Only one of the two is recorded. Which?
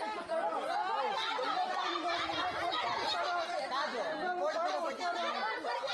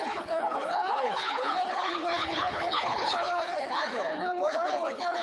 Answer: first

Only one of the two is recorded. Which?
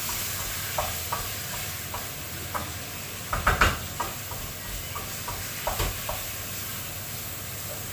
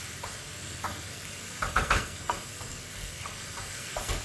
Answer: first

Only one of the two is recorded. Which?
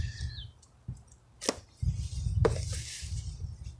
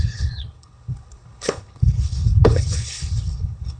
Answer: first